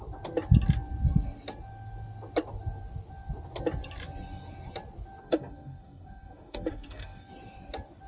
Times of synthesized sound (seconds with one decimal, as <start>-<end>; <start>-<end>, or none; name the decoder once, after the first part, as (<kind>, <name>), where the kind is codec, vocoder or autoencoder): 5.2-7.3 (codec, SNAC)